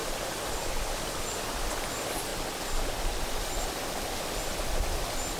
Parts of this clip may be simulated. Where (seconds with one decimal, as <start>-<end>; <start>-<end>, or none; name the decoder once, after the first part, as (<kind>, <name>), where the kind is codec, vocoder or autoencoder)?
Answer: 0.0-1.3 (vocoder, BigVGAN v2); 2.3-3.4